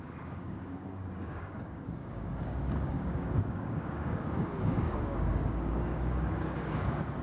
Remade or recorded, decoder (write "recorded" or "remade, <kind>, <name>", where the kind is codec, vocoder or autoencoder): remade, codec, DAC